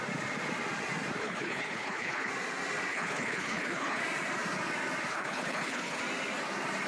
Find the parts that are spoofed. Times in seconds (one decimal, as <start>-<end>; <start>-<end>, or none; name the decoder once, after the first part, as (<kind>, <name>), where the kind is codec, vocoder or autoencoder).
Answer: 1.2-2.3 (codec, HILCodec); 2.9-4.0; 5.1-6.0